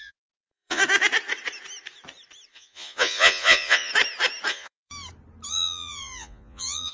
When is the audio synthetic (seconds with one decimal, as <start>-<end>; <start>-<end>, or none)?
0.0-0.8; 2.5-3.9; 4.5-4.9; 5.5-6.9